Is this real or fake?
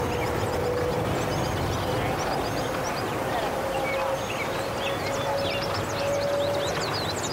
real